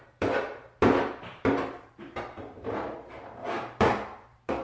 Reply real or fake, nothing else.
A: fake